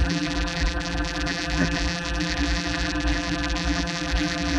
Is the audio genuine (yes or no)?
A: no